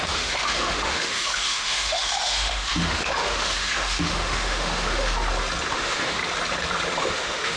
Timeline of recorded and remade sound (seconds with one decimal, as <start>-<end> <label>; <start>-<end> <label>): 0.0-5.2 remade; 5.2-5.7 recorded; 5.7-6.2 remade; 6.2-7.0 recorded; 7.0-7.6 remade